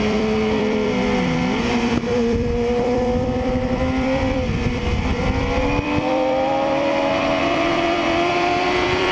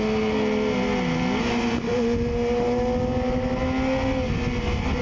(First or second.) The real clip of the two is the second